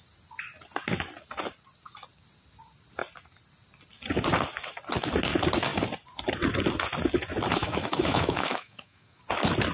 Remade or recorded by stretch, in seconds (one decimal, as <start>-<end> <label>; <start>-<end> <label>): 0.0-7.6 recorded; 7.6-9.2 remade; 9.2-9.7 recorded

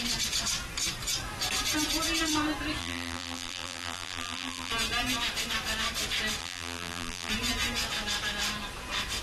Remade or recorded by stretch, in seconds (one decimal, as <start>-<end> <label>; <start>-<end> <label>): 0.0-2.8 recorded; 2.8-4.7 remade; 4.7-6.4 recorded; 6.4-7.3 remade; 7.3-9.2 recorded